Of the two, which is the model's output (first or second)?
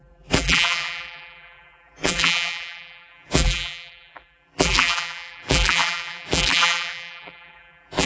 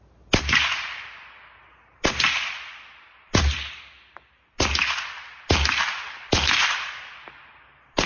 first